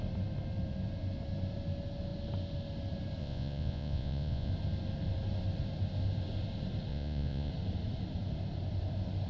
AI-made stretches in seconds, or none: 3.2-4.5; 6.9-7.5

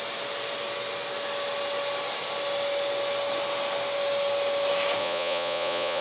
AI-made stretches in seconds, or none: 5.0-6.0

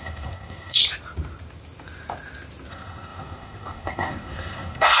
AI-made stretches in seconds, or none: 0.0-0.8; 2.7-5.0